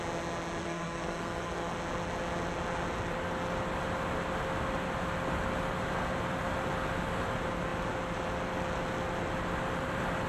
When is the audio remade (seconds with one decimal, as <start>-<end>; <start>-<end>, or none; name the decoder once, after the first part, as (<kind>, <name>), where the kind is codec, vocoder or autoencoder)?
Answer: 0.6-1.7 (codec, SNAC)

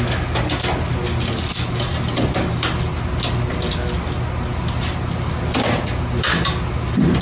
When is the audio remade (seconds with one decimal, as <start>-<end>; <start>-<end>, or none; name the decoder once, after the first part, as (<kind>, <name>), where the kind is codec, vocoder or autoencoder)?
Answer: none

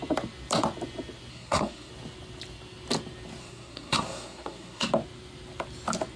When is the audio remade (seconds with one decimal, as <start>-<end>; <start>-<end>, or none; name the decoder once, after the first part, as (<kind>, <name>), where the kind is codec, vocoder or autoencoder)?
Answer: 1.3-1.9 (codec, SNAC); 3.4-4.9

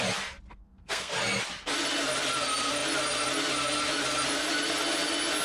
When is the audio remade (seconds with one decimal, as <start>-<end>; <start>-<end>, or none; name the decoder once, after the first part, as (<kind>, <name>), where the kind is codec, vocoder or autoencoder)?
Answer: 0.5-1.1 (codec, SNAC)